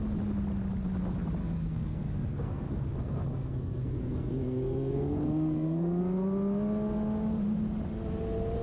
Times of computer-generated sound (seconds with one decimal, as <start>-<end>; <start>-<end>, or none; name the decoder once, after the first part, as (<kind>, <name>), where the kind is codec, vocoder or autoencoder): 1.4-6.0 (codec, SNAC)